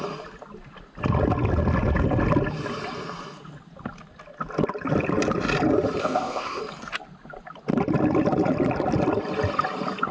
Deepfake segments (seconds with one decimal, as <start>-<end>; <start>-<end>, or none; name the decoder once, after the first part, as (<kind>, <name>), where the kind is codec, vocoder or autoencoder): 6.0-6.6 (codec, ZipCodec)